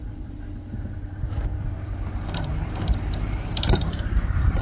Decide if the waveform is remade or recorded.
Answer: remade